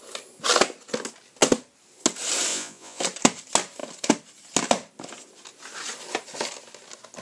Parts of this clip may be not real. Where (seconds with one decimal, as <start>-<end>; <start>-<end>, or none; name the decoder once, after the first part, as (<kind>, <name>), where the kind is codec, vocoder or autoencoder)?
2.5-3.0 (vocoder, Vocos)